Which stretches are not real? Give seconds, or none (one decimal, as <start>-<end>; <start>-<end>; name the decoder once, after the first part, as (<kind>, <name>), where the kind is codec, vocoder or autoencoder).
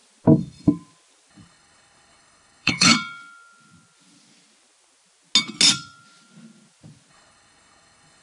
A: 1.3-2.9 (codec, HILCodec); 7.1-8.2